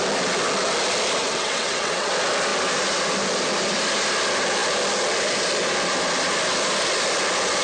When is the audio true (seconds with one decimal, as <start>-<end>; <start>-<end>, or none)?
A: 0.0-1.2; 2.1-7.6